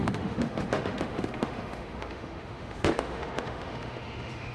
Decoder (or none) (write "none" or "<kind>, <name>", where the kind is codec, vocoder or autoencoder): autoencoder, DAC-VAE